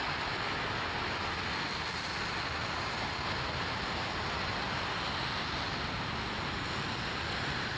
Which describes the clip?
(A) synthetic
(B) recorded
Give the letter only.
B